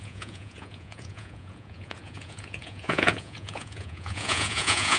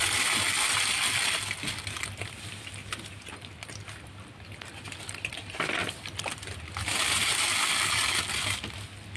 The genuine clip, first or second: second